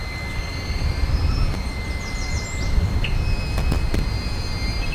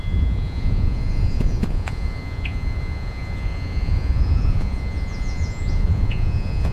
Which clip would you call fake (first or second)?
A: second